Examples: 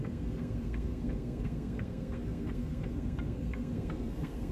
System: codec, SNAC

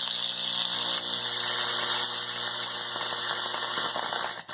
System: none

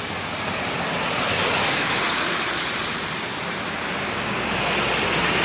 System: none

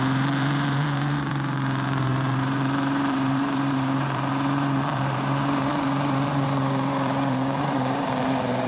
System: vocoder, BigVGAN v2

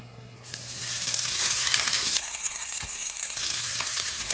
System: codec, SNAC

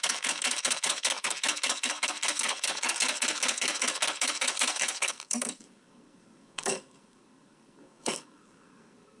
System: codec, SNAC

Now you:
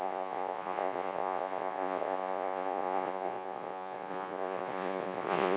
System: vocoder, Vocos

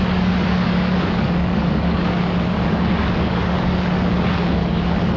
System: codec, DAC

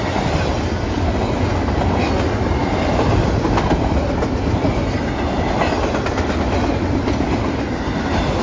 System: none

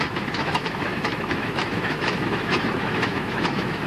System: autoencoder, DAC-VAE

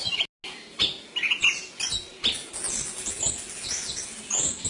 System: none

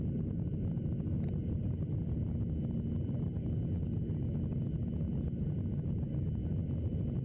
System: none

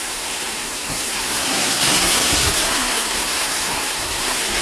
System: codec, SNAC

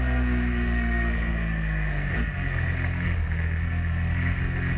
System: codec, SNAC